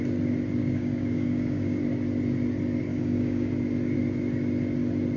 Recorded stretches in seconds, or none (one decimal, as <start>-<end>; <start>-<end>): 0.0-0.6; 1.8-2.9; 3.5-5.2